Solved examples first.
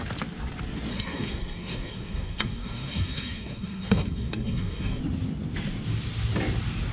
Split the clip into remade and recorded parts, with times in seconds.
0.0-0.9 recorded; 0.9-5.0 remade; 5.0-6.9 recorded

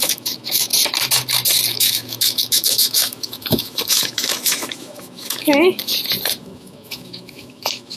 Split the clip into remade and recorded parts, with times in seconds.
0.0-0.7 remade; 0.7-1.7 recorded; 1.7-5.9 remade; 5.9-6.4 recorded; 6.4-8.0 remade

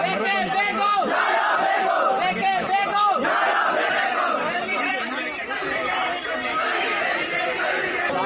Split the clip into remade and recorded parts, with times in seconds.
0.0-6.5 recorded; 6.5-7.0 remade; 7.0-8.3 recorded

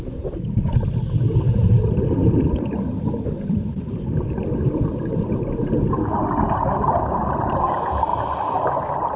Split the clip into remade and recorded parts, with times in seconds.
0.0-2.2 recorded; 2.2-5.3 remade; 5.3-9.2 recorded